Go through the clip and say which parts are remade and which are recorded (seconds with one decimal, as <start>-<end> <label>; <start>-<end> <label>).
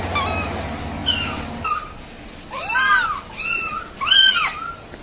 0.0-5.0 recorded